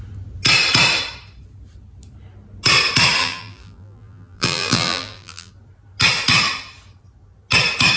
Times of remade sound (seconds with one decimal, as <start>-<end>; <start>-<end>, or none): 3.2-5.5